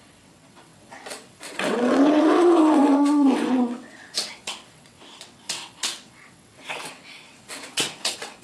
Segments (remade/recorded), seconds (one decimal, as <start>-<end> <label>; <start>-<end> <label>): 0.0-8.4 remade